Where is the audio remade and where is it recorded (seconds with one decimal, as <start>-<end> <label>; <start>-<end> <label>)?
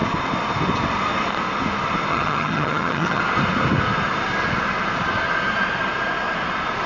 0.0-2.1 recorded; 2.1-3.2 remade; 3.2-6.9 recorded